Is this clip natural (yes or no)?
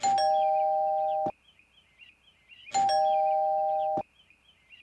yes